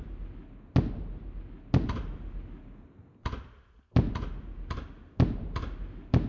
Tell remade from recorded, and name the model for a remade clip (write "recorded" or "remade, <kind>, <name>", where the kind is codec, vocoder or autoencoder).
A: recorded